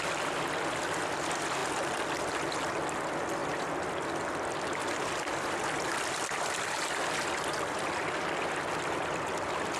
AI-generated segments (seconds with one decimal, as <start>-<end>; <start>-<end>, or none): 3.4-5.9

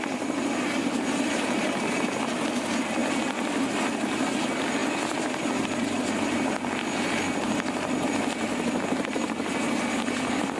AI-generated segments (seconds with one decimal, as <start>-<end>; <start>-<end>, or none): none